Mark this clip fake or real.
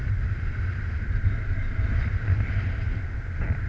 real